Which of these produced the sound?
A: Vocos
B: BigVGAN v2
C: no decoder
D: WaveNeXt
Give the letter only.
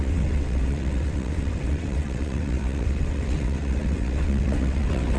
D